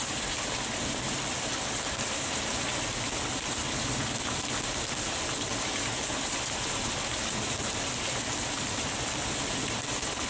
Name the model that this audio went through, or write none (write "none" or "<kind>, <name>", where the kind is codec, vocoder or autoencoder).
none